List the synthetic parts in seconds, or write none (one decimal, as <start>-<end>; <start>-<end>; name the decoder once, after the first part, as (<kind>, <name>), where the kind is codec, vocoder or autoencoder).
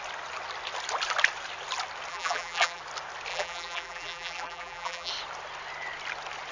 2.1-2.8 (vocoder, BigVGAN v2); 3.3-5.1